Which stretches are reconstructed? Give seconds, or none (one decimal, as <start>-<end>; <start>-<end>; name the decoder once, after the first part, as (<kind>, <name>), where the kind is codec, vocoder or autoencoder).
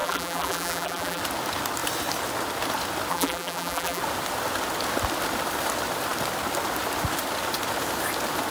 0.0-1.2 (vocoder, BigVGAN v2); 3.1-4.0